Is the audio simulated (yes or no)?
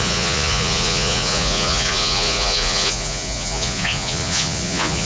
yes